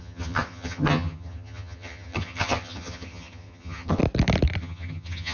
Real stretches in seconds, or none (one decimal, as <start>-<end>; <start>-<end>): 4.0-4.6